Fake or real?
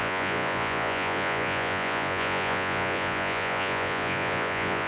fake